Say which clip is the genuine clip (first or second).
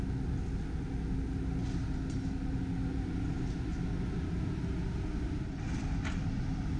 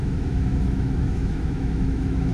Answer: first